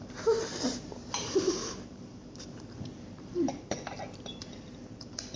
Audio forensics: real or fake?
fake